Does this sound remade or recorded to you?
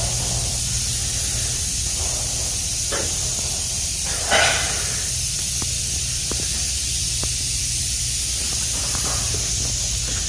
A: recorded